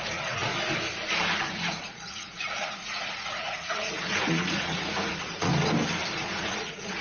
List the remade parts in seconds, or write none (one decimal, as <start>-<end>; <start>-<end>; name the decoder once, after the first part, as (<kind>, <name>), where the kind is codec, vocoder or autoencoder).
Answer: 0.0-0.5 (vocoder, Vocos); 1.5-5.5; 6.1-7.0